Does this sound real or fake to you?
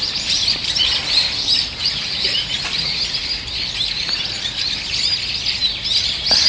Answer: real